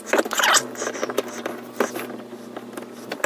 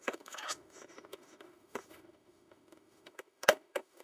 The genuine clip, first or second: first